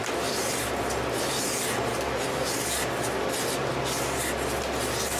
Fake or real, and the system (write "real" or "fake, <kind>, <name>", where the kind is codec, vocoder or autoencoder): real